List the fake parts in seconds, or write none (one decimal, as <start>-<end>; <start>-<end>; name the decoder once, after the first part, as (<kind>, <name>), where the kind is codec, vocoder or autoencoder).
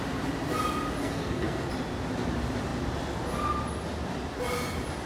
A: 1.0-1.7 (codec, SNAC)